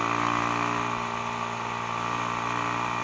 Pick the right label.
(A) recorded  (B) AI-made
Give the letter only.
A